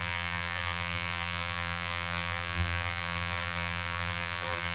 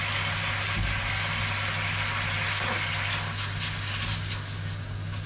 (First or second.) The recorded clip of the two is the second